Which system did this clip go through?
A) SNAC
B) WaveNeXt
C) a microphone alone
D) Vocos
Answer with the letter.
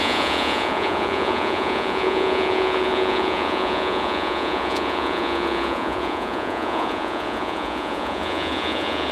D